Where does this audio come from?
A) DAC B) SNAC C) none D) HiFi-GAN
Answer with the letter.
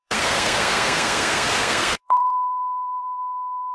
B